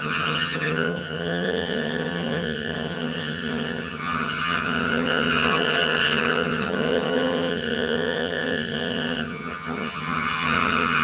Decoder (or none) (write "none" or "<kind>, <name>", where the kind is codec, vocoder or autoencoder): vocoder, HiFi-GAN